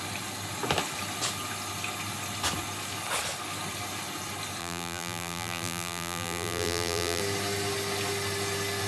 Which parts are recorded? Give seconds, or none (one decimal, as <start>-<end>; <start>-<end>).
0.0-4.6; 7.2-8.9